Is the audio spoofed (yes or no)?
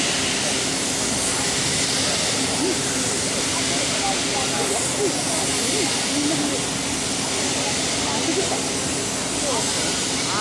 no